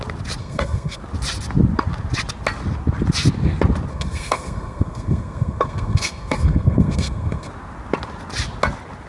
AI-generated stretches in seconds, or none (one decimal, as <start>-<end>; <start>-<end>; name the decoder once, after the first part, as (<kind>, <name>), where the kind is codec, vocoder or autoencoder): 0.4-1.0 (codec, SNAC); 3.9-7.5